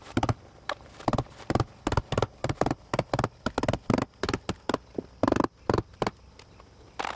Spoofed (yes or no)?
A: no